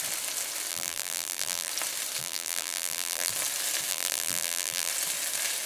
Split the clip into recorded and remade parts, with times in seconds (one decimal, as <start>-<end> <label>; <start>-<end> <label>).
0.0-0.7 recorded; 0.7-1.7 remade; 1.7-2.2 recorded; 2.2-3.3 remade; 3.3-3.9 recorded; 3.9-4.9 remade; 4.9-5.7 recorded